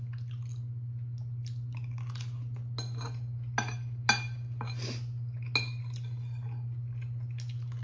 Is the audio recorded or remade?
recorded